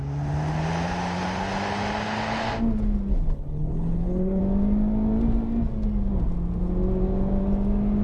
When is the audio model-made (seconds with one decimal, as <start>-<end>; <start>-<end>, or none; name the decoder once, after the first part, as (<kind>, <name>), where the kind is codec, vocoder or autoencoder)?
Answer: 3.1-4.4 (codec, HILCodec)